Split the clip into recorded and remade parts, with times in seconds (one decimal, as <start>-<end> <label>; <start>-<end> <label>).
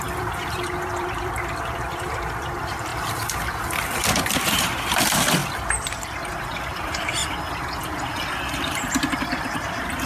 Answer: 0.0-2.9 remade; 2.9-3.5 recorded; 3.5-7.2 remade; 7.2-8.6 recorded; 8.6-10.1 remade